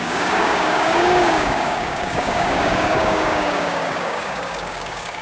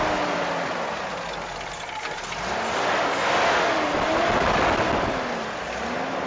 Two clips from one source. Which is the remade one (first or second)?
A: first